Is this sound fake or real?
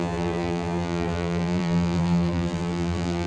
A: fake